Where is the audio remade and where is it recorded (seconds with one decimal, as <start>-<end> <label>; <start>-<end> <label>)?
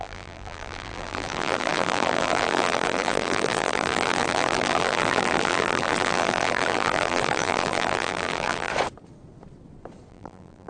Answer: 0.0-8.7 remade; 8.7-10.1 recorded; 10.1-10.7 remade